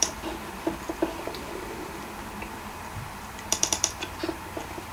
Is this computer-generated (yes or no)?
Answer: yes